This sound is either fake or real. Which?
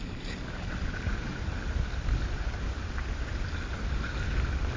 real